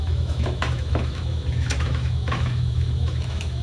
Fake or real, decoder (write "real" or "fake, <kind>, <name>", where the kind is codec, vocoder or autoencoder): fake, autoencoder, DAC-VAE